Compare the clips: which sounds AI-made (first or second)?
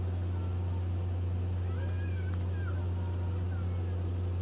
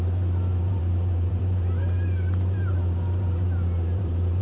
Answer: second